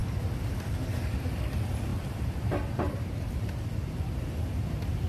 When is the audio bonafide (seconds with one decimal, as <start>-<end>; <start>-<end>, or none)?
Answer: 0.0-1.9; 4.2-5.1